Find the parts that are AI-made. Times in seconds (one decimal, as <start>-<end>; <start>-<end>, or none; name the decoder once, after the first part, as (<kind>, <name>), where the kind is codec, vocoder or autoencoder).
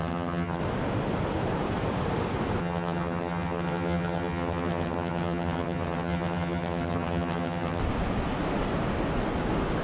0.0-0.6 (vocoder, HiFi-GAN); 2.6-7.8